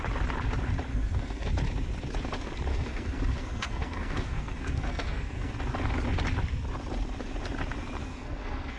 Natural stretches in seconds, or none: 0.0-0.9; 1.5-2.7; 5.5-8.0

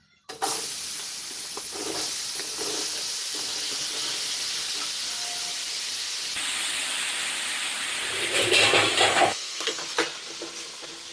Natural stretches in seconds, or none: 0.0-9.1; 9.8-11.1

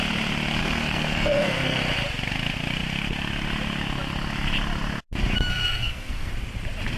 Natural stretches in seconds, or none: 0.0-0.6; 1.8-5.5; 6.3-7.0

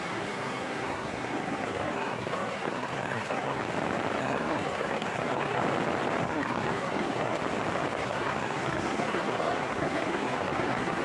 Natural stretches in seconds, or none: 3.6-4.2; 5.6-6.2; 7.4-8.0

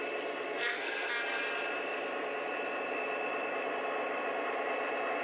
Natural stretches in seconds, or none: 0.0-0.6; 1.1-5.2

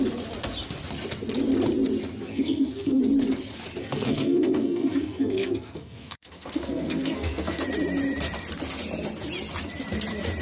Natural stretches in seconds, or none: 0.0-2.3; 3.0-3.8; 7.6-10.4

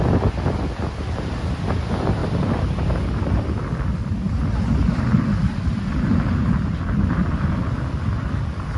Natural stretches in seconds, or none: 0.0-8.8